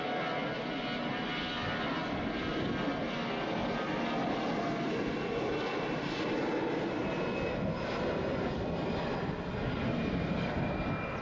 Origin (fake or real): real